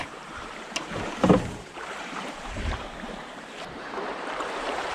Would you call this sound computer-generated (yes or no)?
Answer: yes